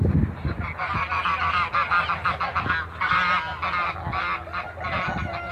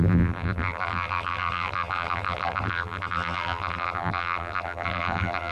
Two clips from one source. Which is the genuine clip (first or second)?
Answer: first